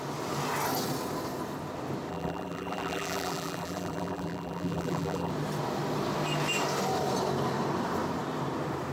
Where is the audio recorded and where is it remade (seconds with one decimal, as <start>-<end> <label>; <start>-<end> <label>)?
0.0-2.1 recorded; 2.1-5.3 remade; 5.3-8.9 recorded